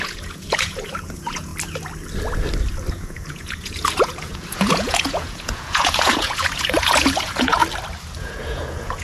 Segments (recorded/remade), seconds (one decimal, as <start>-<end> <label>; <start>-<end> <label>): 0.0-1.5 remade; 1.5-2.9 recorded; 2.9-7.6 remade; 7.6-8.2 recorded; 8.2-9.0 remade